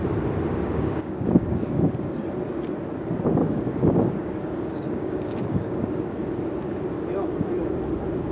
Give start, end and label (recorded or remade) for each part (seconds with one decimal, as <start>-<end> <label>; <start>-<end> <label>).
0.0-0.5 recorded; 0.5-2.2 remade; 2.2-3.4 recorded; 3.4-6.0 remade; 6.0-8.3 recorded